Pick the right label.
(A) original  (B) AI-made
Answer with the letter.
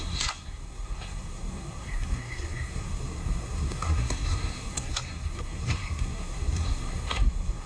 B